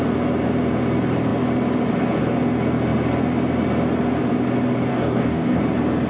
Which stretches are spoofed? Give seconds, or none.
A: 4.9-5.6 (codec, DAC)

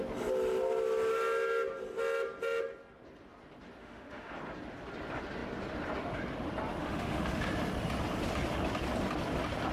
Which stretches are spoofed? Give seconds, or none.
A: 3.8-4.3 (autoencoder, DAC-VAE); 6.8-7.4

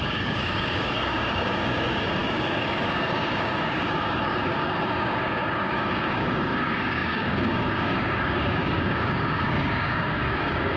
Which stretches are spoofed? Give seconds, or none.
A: 0.0-10.8 (codec, DAC)

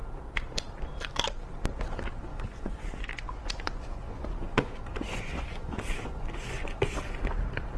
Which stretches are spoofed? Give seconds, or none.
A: 2.3-6.9 (vocoder, Vocos)